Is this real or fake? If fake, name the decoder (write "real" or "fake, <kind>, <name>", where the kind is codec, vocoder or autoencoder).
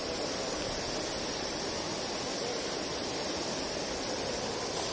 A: real